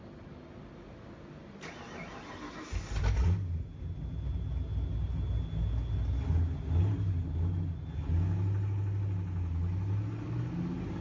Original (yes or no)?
yes